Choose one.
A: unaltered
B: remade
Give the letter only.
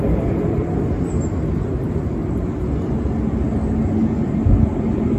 A